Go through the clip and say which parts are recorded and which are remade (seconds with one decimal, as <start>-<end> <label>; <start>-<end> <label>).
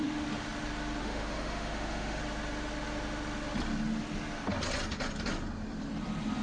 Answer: 0.0-1.0 recorded; 1.0-2.2 remade; 2.2-6.4 recorded